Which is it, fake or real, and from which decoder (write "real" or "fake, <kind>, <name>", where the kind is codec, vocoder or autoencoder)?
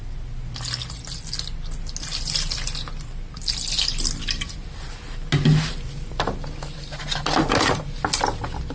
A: real